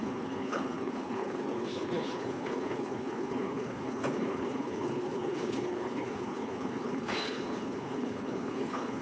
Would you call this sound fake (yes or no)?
yes